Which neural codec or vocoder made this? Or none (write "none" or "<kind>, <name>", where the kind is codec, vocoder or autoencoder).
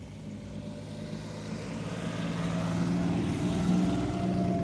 none